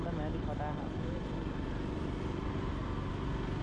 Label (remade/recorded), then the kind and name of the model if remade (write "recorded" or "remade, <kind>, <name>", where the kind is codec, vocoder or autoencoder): recorded